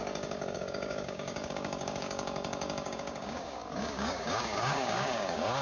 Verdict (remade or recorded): remade